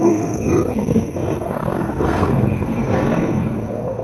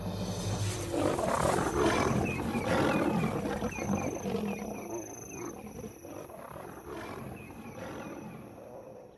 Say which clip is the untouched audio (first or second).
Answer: second